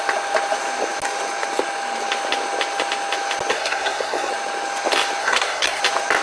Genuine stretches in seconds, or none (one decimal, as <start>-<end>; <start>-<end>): 0.0-3.5; 4.3-5.2; 5.8-6.2